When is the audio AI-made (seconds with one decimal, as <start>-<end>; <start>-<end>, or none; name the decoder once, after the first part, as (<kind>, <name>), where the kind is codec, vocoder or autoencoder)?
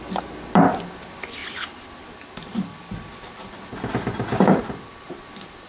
none